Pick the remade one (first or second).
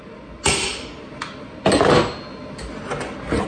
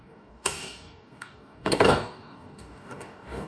second